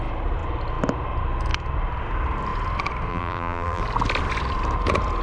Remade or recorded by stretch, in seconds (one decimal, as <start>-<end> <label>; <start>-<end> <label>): 0.0-3.1 recorded; 3.1-3.8 remade; 3.8-5.2 recorded